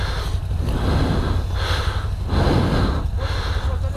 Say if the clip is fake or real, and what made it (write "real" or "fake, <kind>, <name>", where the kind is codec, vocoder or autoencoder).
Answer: real